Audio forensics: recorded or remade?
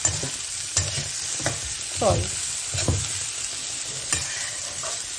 recorded